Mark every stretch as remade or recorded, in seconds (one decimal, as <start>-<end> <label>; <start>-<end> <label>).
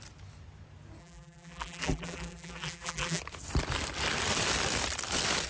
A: 0.0-1.0 recorded; 1.0-3.2 remade; 3.2-5.5 recorded